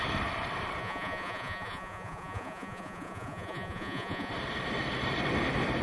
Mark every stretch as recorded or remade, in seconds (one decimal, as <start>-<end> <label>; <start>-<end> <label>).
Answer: 0.0-0.8 recorded; 0.8-4.3 remade; 4.3-5.8 recorded